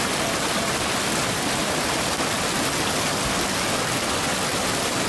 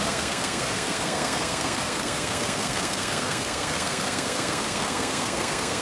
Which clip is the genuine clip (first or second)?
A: first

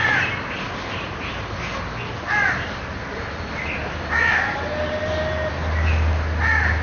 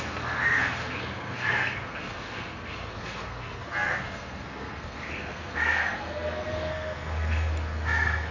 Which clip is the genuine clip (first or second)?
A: first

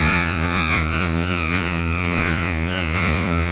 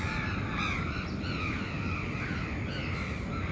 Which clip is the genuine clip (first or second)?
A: second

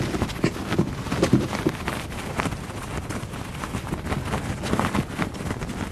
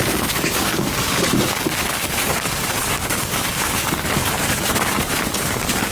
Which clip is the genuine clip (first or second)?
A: first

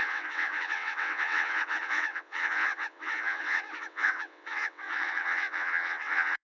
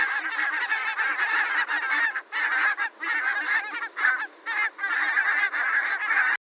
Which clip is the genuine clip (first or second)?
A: second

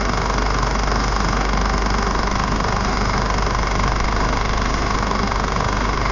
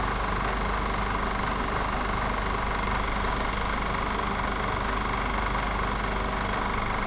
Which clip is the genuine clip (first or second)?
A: second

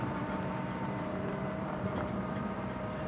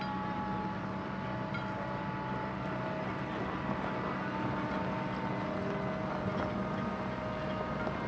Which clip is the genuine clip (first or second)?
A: second